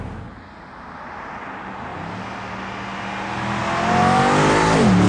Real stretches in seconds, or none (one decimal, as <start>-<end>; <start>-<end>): 0.0-5.1

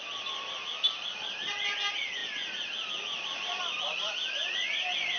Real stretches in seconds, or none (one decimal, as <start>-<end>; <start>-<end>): 0.0-5.2